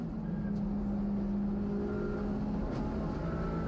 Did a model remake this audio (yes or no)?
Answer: no